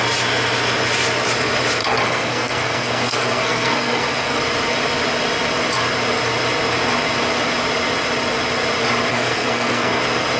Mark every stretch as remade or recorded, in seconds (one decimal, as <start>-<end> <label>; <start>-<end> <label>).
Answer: 0.0-1.8 recorded; 1.8-4.4 remade; 4.4-9.1 recorded; 9.1-10.0 remade; 10.0-10.4 recorded